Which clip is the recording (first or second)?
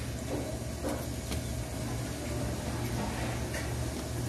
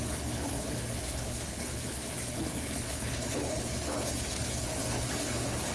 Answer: first